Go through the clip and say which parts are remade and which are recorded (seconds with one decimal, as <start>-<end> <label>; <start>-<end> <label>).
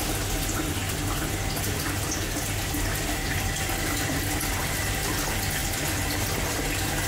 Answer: 0.0-7.1 recorded